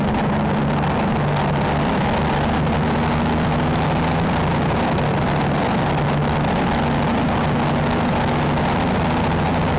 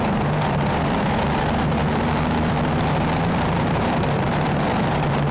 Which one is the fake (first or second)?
second